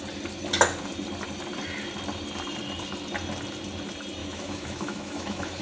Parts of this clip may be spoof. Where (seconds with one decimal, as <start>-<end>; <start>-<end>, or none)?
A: 4.2-5.6